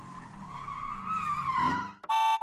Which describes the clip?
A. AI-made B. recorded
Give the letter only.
B